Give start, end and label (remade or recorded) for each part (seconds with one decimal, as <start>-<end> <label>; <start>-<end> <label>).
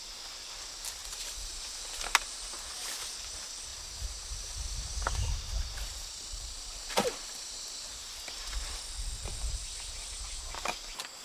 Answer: 0.0-1.0 recorded; 1.0-2.9 remade; 2.9-3.7 recorded; 3.7-8.8 remade; 8.8-11.2 recorded